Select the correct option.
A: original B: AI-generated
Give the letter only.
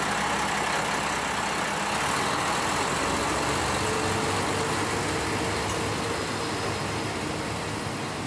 A